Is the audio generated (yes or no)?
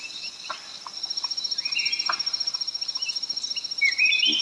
no